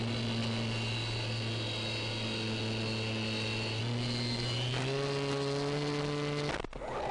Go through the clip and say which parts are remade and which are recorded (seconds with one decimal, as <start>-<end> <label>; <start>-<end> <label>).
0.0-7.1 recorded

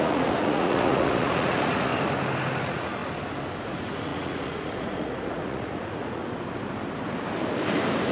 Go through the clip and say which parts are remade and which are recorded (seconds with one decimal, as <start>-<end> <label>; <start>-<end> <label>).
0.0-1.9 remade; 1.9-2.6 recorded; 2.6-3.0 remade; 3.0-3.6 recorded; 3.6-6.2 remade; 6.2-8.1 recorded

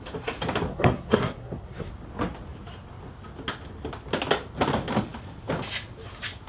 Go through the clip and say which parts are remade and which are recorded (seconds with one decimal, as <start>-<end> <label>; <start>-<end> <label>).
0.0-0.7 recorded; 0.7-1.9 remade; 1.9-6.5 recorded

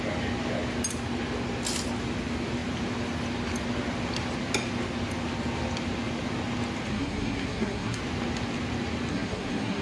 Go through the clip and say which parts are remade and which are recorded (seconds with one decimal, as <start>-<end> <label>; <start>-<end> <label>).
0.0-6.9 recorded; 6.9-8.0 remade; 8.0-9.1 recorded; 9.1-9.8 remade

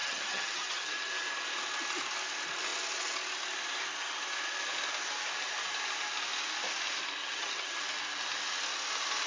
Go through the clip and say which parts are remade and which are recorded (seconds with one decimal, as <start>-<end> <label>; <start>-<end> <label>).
0.0-1.1 remade; 1.1-7.2 recorded; 7.2-7.8 remade; 7.8-9.3 recorded

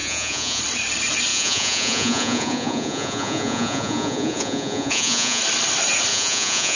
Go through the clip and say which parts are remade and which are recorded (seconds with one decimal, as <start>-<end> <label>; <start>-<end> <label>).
0.0-0.6 remade; 0.6-1.3 recorded; 1.3-5.4 remade; 5.4-6.1 recorded; 6.1-6.8 remade